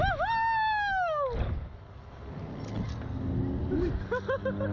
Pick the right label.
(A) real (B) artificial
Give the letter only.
A